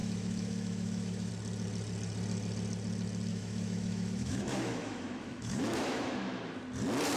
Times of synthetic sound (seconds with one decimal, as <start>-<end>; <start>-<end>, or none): 0.0-1.3; 3.3-6.6